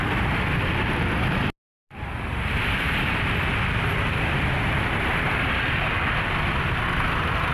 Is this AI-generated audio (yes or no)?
no